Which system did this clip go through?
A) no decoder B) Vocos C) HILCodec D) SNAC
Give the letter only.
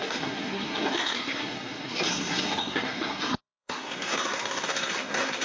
D